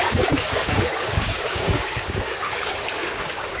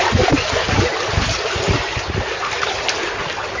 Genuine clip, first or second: second